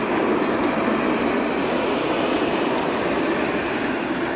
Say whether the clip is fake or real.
real